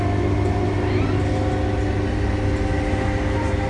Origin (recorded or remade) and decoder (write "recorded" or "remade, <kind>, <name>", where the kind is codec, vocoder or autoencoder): recorded